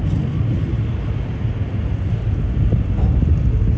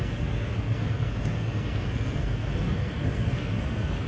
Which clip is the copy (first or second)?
second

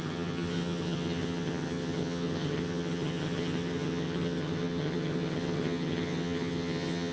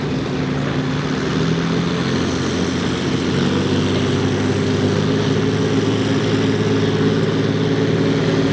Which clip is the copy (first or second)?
first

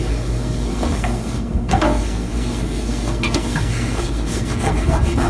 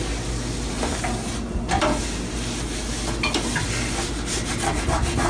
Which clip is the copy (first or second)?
first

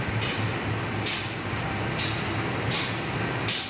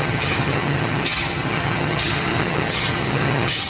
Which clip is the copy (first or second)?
second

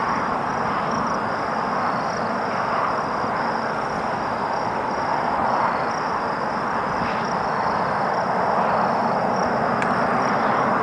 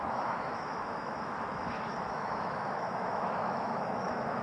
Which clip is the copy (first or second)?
second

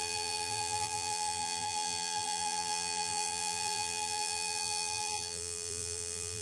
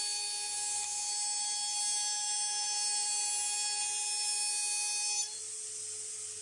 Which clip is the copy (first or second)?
first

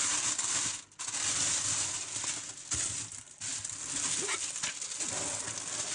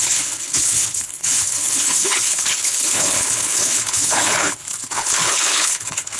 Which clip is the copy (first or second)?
second